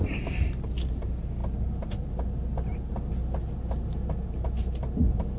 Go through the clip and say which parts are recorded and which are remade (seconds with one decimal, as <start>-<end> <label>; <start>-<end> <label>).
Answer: 0.0-5.4 recorded